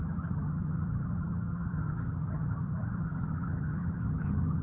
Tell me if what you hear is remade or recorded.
remade